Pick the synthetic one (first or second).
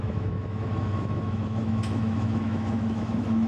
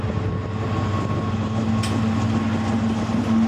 first